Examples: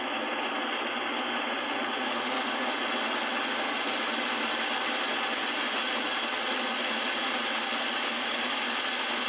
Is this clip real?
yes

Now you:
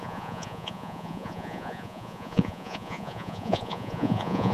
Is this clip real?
no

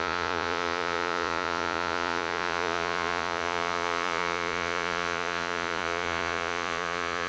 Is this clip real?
no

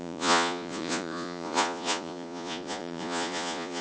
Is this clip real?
no